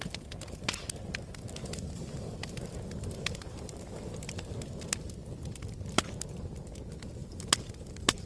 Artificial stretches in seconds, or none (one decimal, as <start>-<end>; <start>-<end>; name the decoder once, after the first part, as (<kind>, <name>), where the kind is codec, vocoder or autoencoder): 2.4-3.8 (vocoder, BigVGAN v2); 7.2-8.3